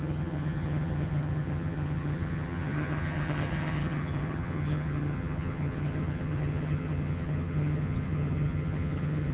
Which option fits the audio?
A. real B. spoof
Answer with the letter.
B